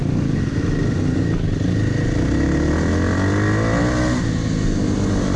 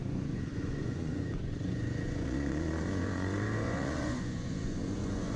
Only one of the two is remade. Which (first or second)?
second